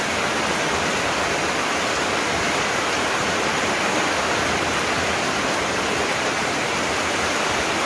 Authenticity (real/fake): real